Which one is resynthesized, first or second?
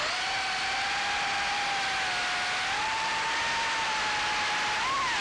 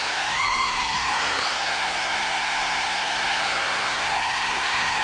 second